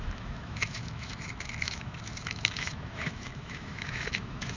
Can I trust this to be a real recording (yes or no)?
no